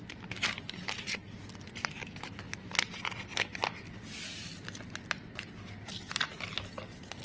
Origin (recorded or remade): recorded